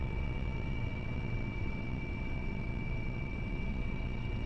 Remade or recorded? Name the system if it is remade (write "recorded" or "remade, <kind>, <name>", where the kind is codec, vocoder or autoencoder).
remade, vocoder, WaveNeXt